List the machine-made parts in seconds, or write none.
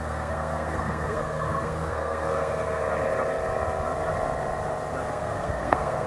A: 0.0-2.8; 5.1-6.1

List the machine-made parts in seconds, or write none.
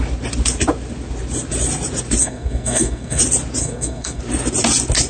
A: 2.2-3.2; 3.6-4.2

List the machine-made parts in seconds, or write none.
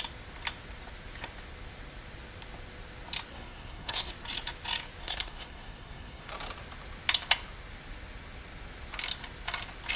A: 3.3-4.1; 5.0-6.3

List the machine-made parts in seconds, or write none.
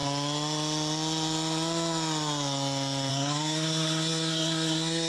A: 3.1-5.1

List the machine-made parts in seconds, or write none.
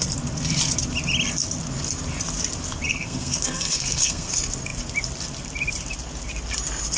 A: 2.9-4.3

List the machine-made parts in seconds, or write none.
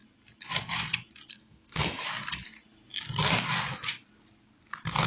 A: 1.3-2.0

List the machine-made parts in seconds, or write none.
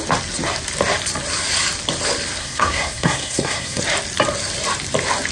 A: 2.4-3.8